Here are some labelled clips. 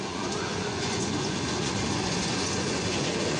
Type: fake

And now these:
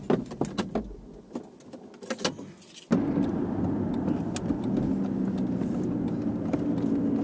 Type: real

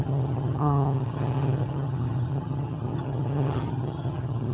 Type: fake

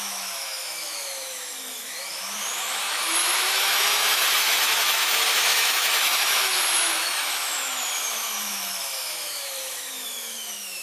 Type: fake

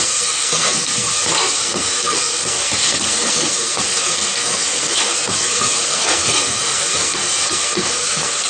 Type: fake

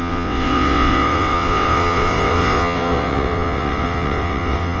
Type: fake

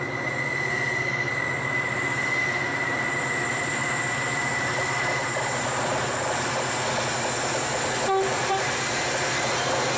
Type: real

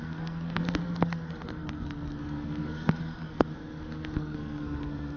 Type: fake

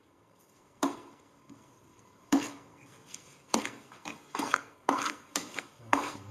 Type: fake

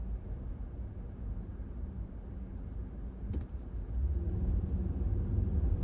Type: real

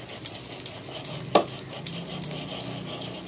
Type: real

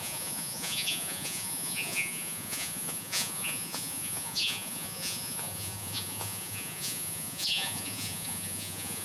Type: fake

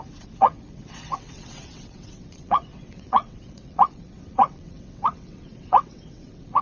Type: fake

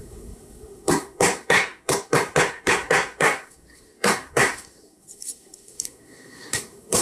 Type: fake